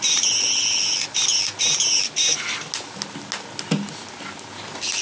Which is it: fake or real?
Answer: real